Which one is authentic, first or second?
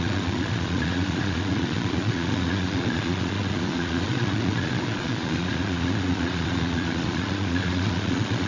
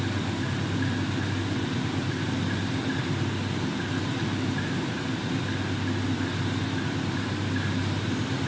second